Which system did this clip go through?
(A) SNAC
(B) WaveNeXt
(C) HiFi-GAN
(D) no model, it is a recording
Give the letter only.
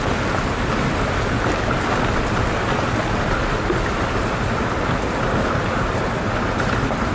D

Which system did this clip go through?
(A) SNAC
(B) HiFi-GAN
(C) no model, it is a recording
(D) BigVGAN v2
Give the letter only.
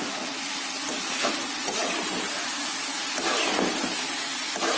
C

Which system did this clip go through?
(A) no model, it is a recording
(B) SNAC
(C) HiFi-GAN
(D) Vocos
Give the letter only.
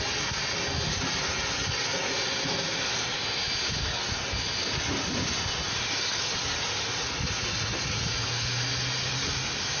A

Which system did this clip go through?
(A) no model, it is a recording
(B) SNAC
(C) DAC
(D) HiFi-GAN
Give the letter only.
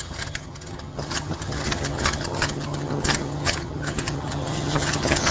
D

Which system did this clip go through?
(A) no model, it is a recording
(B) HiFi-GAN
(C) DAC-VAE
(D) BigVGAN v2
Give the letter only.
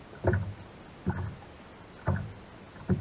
A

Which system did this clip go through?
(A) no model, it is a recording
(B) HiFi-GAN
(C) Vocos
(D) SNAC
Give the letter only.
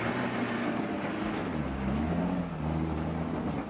A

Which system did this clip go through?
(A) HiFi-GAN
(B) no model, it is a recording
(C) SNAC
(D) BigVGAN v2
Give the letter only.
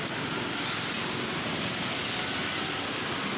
B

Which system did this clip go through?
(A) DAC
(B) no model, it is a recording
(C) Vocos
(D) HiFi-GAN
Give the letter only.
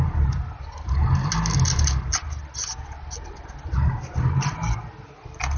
B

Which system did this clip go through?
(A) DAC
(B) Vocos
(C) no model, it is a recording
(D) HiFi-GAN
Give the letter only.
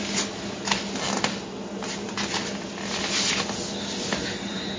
C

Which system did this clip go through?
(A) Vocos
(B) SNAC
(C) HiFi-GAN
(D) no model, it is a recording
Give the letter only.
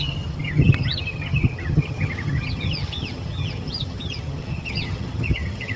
C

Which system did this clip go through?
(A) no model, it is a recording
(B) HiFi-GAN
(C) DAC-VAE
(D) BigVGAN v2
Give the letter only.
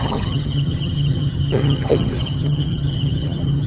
B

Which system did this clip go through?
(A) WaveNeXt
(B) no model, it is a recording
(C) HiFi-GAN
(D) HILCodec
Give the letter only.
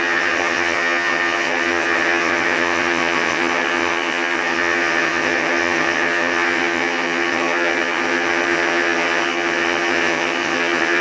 C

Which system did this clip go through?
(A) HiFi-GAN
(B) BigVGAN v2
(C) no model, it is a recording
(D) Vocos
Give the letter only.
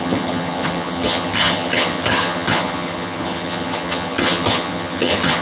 A